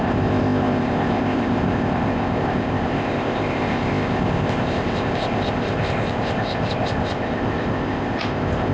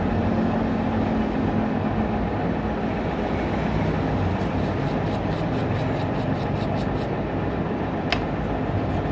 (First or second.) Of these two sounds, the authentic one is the second